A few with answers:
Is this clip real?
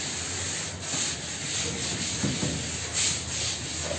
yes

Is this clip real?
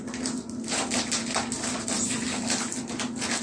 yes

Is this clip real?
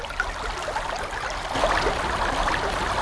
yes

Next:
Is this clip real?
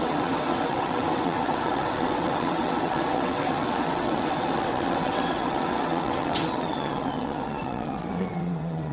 no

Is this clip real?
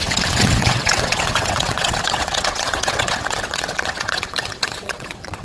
no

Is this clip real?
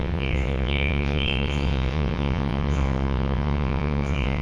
no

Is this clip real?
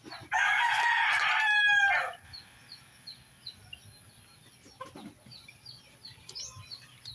yes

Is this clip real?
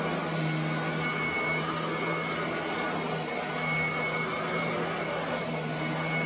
yes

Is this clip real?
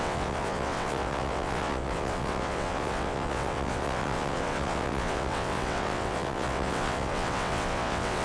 no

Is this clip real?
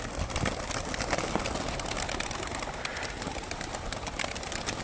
yes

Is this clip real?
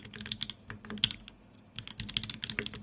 yes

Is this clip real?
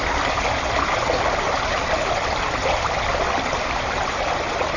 yes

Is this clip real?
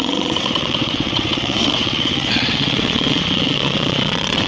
no